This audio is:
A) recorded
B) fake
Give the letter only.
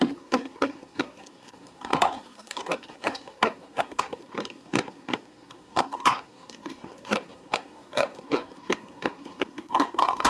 B